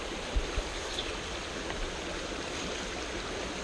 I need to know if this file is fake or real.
real